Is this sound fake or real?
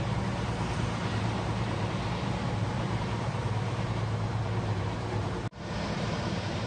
fake